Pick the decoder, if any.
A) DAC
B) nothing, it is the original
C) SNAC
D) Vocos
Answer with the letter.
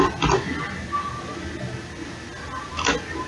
B